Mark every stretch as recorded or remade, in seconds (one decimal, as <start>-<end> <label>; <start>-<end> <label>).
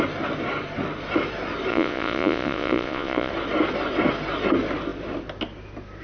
0.0-1.7 recorded; 1.7-3.3 remade; 3.3-6.0 recorded